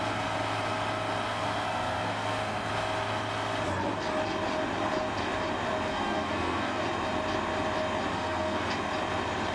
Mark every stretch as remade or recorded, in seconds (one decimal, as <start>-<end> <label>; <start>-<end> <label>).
0.0-1.3 recorded; 1.3-2.7 remade; 2.7-5.9 recorded; 5.9-6.8 remade; 6.8-8.1 recorded; 8.1-8.7 remade; 8.7-9.5 recorded